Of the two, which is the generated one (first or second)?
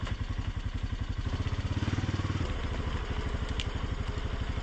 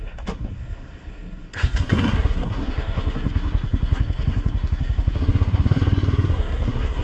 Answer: second